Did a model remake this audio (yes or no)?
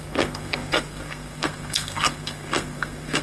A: yes